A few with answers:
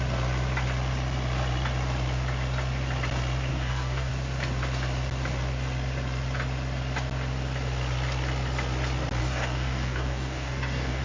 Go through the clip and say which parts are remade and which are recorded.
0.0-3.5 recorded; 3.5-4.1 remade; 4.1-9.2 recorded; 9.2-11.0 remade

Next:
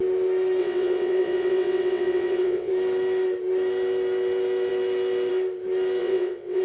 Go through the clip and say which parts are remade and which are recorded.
0.0-0.6 recorded; 0.6-2.7 remade; 2.7-6.0 recorded; 6.0-6.6 remade

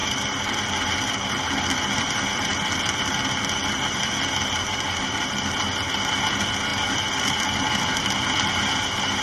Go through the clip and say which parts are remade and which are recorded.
0.0-9.2 recorded

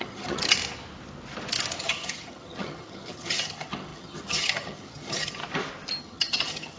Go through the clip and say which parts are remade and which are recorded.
0.0-0.4 remade; 0.4-1.8 recorded; 1.8-5.4 remade; 5.4-6.0 recorded; 6.0-6.8 remade

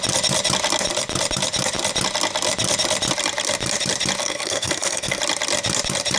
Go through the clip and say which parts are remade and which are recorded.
0.0-4.2 recorded; 4.2-5.2 remade; 5.2-6.2 recorded

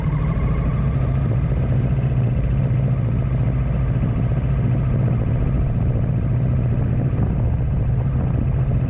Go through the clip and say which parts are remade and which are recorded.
0.0-0.7 recorded; 0.7-2.6 remade; 2.6-8.9 recorded